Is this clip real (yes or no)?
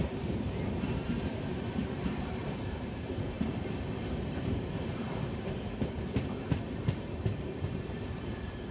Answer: no